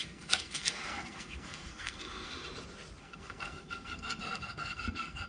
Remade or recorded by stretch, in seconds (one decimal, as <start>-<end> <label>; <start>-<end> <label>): 0.0-2.3 remade; 2.3-3.0 recorded; 3.0-5.3 remade